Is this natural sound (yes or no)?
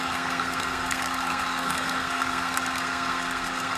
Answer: no